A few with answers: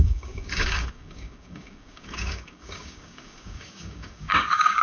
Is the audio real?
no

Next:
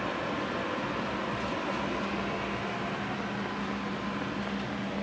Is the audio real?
yes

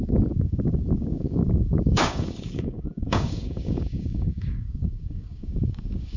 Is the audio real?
no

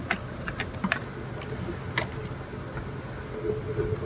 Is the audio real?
yes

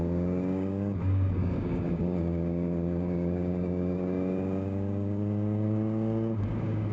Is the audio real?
no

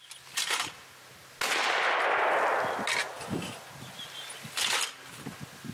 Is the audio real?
yes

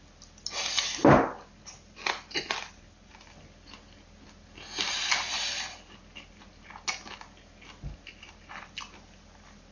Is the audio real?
yes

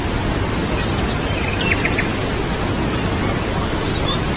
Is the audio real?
yes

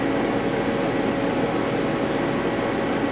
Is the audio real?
yes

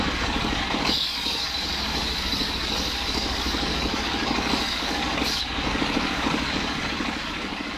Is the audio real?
no